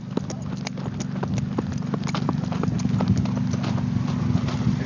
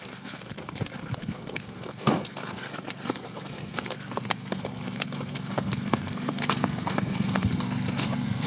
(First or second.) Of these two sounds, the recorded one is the first